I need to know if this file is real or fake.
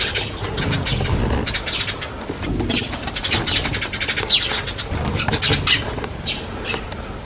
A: real